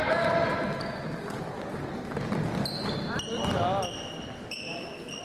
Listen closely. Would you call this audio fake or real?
real